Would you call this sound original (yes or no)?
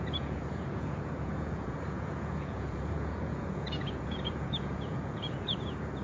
no